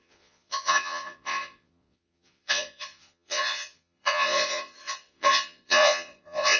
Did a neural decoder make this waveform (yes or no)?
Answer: yes